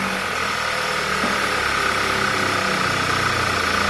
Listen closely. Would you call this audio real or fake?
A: real